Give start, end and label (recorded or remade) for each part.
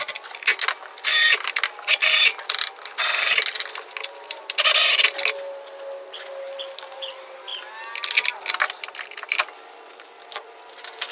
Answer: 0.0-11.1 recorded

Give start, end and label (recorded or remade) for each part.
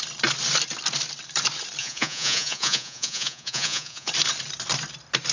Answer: 0.0-1.8 recorded; 1.8-4.1 remade; 4.1-5.3 recorded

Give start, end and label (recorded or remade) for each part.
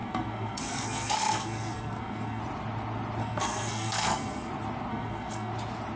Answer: 0.0-2.4 remade; 2.4-3.2 recorded; 3.2-4.5 remade; 4.5-4.9 recorded; 4.9-5.5 remade; 5.5-6.0 recorded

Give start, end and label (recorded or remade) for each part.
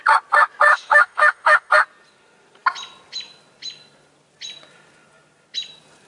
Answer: 0.0-0.7 recorded; 0.7-1.7 remade; 1.7-6.1 recorded